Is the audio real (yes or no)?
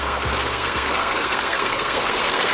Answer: no